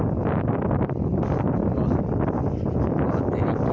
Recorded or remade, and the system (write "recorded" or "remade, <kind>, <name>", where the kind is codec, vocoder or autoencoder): recorded